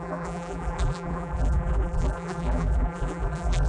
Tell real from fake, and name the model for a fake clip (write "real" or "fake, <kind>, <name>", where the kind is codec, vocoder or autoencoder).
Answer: fake, vocoder, BigVGAN v2